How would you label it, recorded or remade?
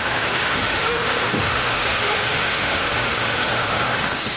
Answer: remade